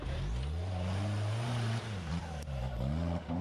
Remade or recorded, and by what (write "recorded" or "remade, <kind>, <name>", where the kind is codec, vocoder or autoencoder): recorded